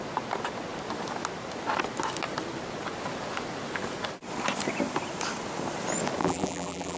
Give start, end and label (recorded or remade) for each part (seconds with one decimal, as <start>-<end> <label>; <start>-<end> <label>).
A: 0.0-6.2 recorded; 6.2-7.0 remade